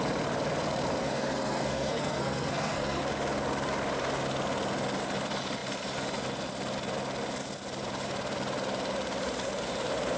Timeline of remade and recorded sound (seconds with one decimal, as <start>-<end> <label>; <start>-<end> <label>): 0.0-1.0 recorded; 1.0-3.0 remade; 3.0-10.2 recorded